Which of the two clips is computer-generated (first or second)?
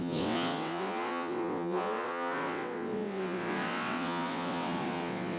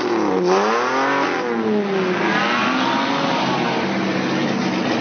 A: first